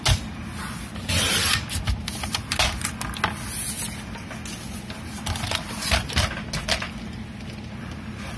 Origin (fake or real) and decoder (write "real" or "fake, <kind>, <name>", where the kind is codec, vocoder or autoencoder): real